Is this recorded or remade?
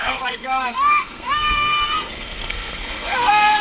remade